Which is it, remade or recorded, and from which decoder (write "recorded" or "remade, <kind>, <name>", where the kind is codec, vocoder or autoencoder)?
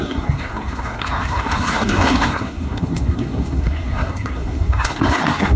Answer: remade, codec, SNAC